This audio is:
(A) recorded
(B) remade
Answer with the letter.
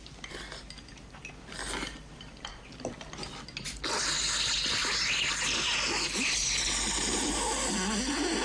A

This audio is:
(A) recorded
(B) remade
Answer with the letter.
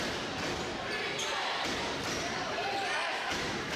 A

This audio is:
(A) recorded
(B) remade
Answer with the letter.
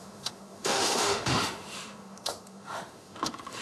B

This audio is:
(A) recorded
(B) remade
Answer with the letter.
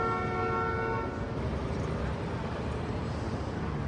A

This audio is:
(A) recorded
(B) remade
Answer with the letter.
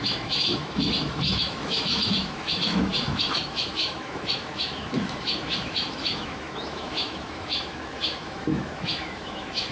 B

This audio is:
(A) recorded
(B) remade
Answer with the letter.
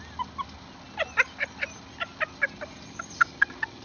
A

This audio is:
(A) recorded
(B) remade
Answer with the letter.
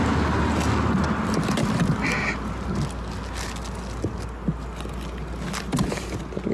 A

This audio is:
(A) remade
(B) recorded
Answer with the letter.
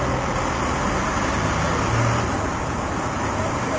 B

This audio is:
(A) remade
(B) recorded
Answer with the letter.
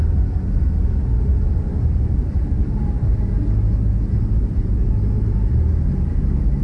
B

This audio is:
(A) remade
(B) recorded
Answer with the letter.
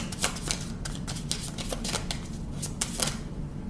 B